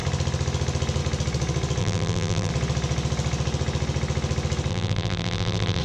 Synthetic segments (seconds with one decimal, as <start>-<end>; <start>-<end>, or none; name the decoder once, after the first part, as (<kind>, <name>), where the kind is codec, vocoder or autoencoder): 1.8-2.5 (vocoder, BigVGAN v2); 4.7-5.8

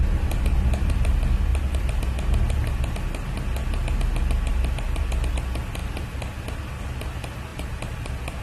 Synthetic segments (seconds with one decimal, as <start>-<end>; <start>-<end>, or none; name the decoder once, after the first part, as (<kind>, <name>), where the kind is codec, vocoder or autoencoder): 1.5-2.0 (vocoder, BigVGAN v2); 7.5-8.4

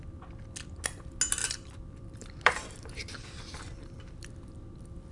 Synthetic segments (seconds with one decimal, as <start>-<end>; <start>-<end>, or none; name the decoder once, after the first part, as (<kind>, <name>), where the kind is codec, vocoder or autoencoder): 1.4-4.5 (vocoder, BigVGAN v2)

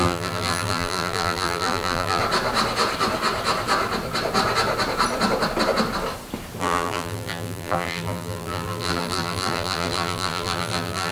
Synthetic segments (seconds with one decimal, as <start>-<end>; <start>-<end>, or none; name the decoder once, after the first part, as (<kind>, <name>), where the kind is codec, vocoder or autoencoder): 0.0-2.2 (vocoder, BigVGAN v2); 6.6-11.1

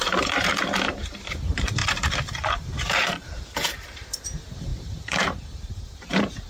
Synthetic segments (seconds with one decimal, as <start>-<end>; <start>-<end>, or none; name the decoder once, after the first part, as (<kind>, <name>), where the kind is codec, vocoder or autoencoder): 0.0-6.5 (vocoder, BigVGAN v2)